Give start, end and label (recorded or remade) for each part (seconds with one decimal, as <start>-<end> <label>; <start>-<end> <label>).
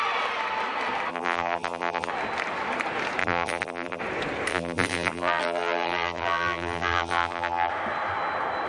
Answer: 0.0-1.1 recorded; 1.1-2.1 remade; 2.1-3.2 recorded; 3.2-4.0 remade; 4.0-4.5 recorded; 4.5-7.7 remade; 7.7-8.7 recorded